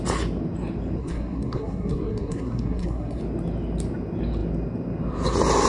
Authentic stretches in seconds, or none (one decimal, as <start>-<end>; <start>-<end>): 0.0-1.0; 3.2-5.7